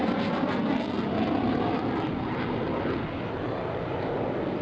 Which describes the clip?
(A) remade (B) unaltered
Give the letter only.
B